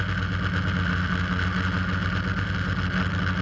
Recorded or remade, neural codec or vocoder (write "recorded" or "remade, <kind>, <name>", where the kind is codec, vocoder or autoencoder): recorded